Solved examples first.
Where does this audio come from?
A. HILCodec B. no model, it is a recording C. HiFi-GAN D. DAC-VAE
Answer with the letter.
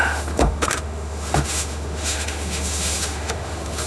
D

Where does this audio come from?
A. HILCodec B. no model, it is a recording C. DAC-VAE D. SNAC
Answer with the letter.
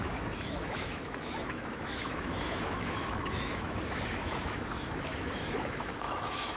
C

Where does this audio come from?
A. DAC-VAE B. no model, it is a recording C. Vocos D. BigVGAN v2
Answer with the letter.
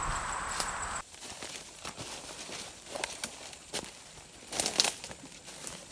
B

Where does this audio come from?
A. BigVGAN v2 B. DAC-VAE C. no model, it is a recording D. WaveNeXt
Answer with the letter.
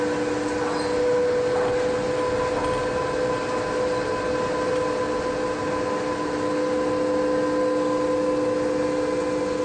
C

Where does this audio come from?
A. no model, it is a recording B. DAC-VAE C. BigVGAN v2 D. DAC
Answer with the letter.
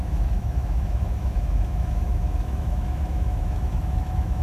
B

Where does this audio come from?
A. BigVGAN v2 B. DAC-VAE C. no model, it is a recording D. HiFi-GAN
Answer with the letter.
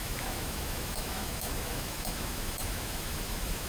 B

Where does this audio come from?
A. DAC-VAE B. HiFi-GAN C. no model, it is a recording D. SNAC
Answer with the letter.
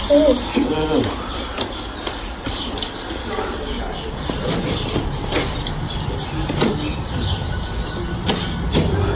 C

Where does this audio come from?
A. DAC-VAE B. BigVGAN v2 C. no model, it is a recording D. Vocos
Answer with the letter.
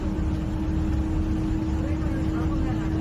C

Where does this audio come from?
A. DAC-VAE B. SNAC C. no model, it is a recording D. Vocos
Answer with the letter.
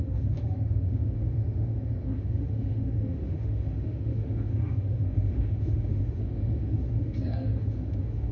A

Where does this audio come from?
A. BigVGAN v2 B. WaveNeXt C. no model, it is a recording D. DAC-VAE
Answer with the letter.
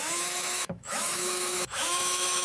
D